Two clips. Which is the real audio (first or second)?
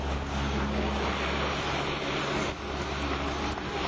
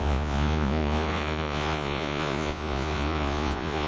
first